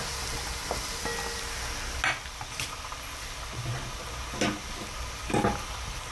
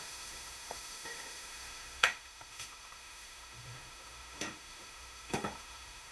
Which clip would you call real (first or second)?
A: first